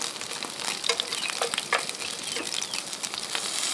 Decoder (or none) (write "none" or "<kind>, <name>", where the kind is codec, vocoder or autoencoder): none